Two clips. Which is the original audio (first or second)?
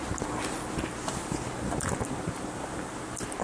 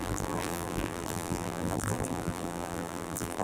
first